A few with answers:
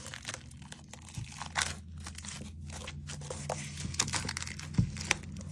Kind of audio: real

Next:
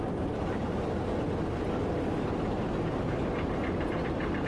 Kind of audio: real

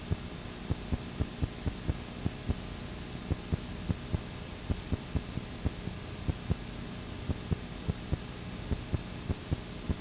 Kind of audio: real